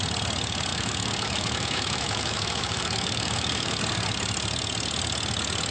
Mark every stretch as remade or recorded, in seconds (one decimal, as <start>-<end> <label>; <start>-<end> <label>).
0.0-0.7 recorded; 0.7-3.8 remade; 3.8-5.7 recorded